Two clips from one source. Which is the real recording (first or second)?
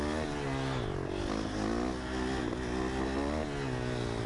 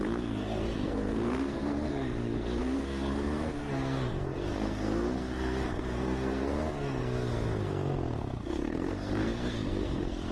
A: first